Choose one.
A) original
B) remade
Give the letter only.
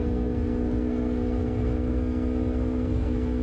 B